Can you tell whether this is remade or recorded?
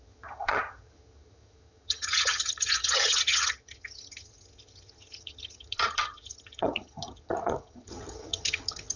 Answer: remade